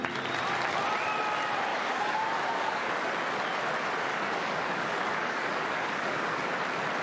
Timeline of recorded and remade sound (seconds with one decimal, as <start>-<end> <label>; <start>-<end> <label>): 0.0-1.7 recorded; 1.7-3.1 remade; 3.1-4.1 recorded; 4.1-6.5 remade; 6.5-7.0 recorded